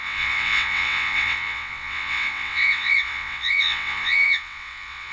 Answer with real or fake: fake